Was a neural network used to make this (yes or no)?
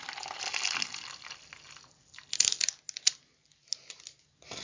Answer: no